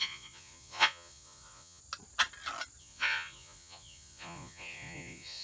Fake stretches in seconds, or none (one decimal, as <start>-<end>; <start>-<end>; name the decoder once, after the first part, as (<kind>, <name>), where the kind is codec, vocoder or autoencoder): 0.0-1.8 (vocoder, Vocos); 2.8-5.4